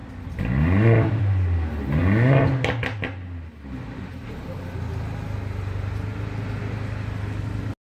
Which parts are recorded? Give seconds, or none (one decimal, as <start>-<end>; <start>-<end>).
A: 0.0-7.9